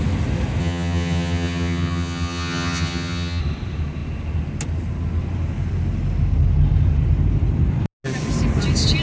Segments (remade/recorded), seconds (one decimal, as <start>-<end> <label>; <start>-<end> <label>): 0.0-0.6 recorded; 0.6-3.4 remade; 3.4-9.0 recorded